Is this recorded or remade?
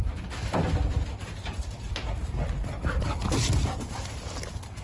recorded